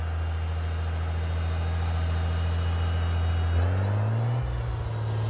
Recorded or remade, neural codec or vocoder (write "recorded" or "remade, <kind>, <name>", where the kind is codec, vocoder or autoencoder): recorded